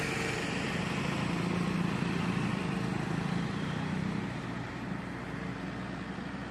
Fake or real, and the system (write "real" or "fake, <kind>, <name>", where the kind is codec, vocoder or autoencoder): fake, vocoder, BigVGAN v2